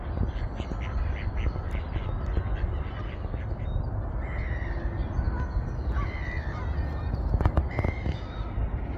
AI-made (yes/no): no